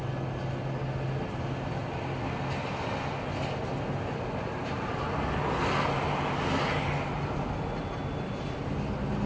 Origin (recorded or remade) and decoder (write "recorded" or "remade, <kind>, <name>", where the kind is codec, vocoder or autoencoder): recorded